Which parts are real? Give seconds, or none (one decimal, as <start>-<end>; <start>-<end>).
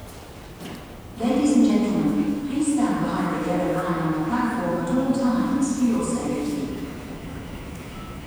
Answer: 0.0-1.7